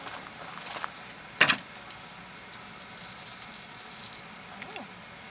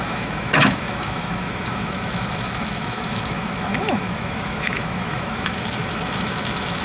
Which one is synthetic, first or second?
second